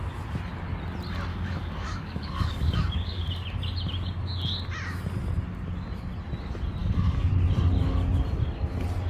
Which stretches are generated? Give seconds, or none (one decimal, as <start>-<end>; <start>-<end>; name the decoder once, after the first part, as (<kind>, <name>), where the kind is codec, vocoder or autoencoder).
1.3-3.3 (codec, DAC); 6.8-7.3